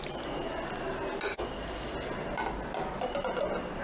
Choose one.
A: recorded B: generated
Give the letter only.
A